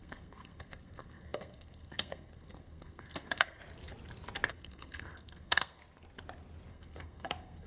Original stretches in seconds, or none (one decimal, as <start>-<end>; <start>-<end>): 3.6-4.5; 5.8-6.7